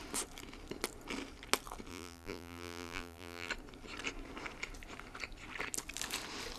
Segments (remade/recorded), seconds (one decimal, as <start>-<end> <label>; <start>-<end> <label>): 0.0-1.9 recorded; 1.9-3.5 remade; 3.5-6.6 recorded